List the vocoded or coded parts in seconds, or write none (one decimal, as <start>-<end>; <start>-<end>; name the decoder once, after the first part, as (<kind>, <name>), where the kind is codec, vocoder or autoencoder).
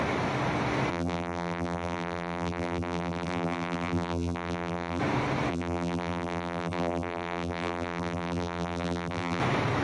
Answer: 0.9-5.0 (vocoder, BigVGAN v2); 5.5-9.4